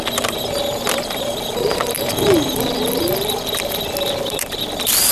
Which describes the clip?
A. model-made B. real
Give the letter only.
B